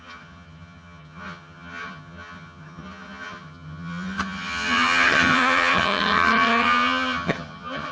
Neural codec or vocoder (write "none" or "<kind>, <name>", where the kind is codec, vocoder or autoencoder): vocoder, HiFi-GAN